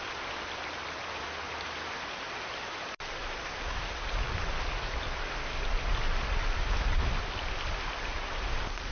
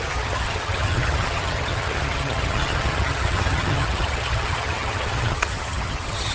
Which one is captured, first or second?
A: first